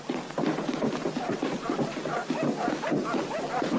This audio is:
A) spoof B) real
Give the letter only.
B